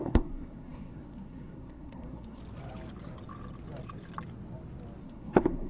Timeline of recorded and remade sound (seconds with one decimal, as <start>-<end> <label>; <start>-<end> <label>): 0.0-2.4 remade; 2.4-5.0 recorded; 5.0-5.7 remade